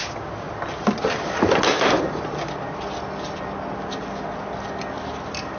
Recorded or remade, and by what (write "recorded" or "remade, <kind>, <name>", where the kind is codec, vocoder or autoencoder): recorded